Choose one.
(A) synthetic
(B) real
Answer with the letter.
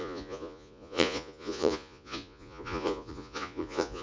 A